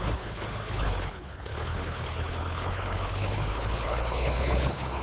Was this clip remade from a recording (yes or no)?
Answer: yes